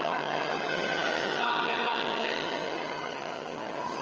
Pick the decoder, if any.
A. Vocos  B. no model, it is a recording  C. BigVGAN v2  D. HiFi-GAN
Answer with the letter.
D